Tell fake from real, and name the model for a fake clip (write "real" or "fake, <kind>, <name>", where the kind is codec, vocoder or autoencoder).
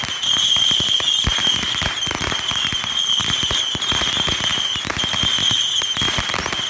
real